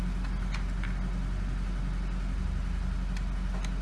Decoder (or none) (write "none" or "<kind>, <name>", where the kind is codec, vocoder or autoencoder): none